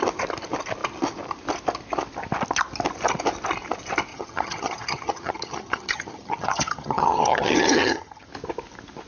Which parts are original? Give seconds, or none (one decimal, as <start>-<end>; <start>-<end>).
0.0-4.1; 8.3-9.1

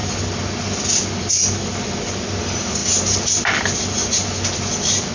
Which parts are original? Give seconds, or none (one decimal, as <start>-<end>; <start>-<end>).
0.0-5.1